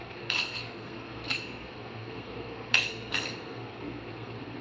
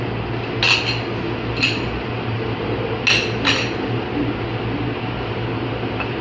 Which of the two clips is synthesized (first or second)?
first